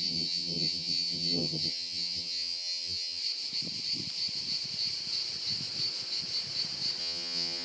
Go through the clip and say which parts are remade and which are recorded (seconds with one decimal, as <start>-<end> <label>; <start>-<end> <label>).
0.0-3.2 remade; 3.2-7.0 recorded; 7.0-7.6 remade